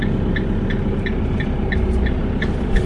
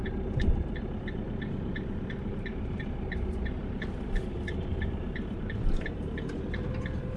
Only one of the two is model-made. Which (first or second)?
second